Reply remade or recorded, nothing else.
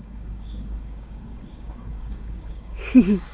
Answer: remade